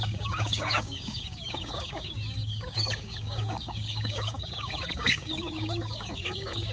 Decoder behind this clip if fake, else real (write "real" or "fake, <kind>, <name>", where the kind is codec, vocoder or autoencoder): fake, codec, DAC